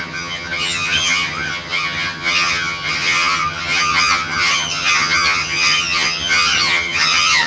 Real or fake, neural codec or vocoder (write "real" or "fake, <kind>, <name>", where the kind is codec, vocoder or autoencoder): fake, vocoder, HiFi-GAN